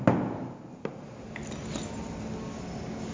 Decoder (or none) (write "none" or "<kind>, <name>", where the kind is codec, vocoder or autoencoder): none